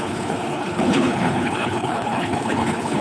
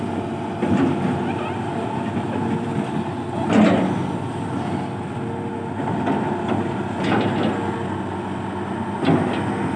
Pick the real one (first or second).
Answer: second